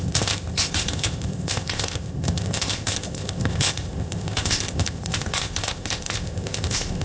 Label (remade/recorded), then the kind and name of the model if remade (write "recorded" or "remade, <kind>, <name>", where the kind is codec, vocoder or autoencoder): remade, codec, ZipCodec